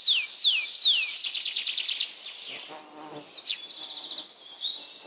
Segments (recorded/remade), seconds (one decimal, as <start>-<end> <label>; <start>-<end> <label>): 0.0-5.1 recorded